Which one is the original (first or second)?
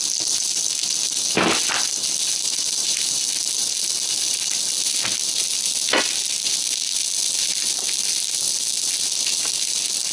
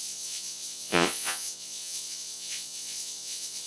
first